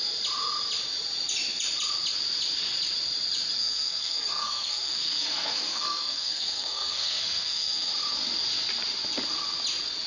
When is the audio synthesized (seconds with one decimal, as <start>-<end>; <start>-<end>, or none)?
3.6-7.9